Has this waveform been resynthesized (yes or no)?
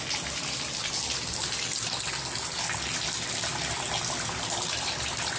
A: no